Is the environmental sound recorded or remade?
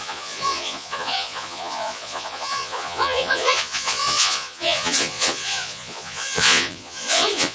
remade